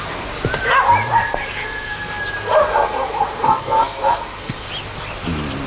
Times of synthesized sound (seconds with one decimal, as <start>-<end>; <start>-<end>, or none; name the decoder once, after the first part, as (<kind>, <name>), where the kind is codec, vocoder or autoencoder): 1.2-2.2 (codec, SNAC); 2.6-4.7